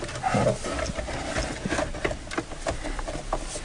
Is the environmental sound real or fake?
real